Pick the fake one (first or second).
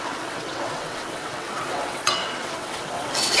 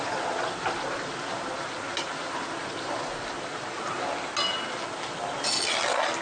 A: first